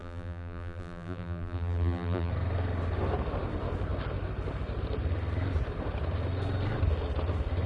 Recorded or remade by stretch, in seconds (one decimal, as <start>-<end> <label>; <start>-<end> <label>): 0.0-2.3 remade; 2.3-7.7 recorded